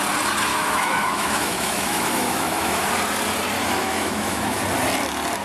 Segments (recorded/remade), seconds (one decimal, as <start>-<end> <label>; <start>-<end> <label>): 0.0-0.5 recorded; 0.5-2.9 remade; 2.9-3.8 recorded; 3.8-4.6 remade; 4.6-5.4 recorded